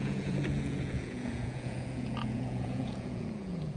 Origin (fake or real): fake